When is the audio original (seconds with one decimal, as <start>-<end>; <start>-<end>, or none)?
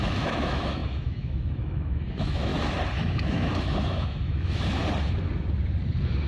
2.5-3.0; 4.8-6.3